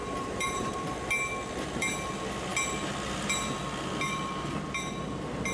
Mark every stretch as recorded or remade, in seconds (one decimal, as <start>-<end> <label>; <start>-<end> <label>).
0.0-0.7 remade; 0.7-5.5 recorded